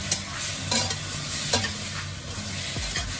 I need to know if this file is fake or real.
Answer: real